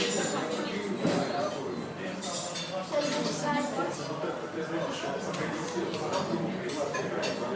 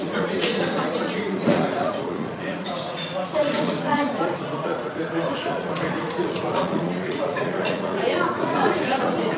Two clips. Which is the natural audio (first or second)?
first